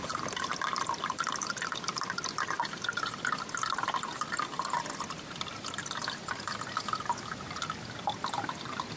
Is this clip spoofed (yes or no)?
no